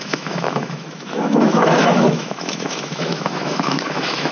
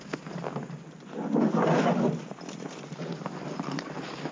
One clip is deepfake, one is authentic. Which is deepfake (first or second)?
first